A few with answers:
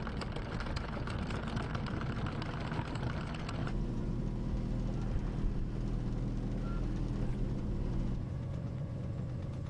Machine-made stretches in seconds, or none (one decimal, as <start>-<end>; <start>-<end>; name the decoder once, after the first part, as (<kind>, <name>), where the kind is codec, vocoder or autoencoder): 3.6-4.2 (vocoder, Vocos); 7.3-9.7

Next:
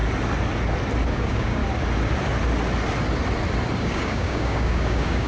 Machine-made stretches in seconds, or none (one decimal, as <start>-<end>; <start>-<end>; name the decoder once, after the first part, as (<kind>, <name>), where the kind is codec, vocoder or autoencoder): 1.1-1.6 (codec, DAC); 3.8-5.3

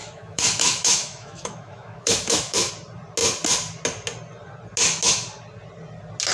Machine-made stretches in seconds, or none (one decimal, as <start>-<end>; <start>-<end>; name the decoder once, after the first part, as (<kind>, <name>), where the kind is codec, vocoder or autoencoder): 0.0-2.7 (autoencoder, DAC-VAE)

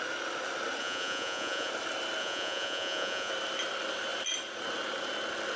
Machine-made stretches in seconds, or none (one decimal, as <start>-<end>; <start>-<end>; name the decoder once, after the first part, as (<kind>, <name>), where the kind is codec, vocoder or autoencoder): 0.8-1.7 (vocoder, Vocos); 2.2-3.3

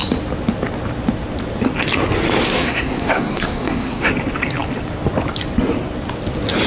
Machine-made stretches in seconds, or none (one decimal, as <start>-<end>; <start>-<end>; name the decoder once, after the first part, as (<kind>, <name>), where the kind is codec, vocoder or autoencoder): 2.4-4.1 (codec, SNAC)

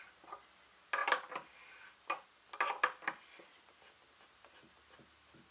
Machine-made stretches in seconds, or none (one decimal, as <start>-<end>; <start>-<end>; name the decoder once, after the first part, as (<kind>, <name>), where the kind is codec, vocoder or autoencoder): none

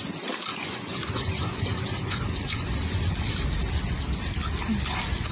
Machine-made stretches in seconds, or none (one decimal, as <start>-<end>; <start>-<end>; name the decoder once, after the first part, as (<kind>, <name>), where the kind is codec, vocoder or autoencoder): 0.5-3.4 (vocoder, Vocos)